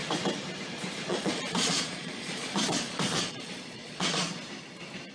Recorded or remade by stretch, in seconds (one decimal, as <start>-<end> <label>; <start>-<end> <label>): 0.0-1.1 recorded; 1.1-4.2 remade; 4.2-5.1 recorded